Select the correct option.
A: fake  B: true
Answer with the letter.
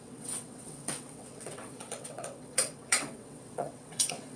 A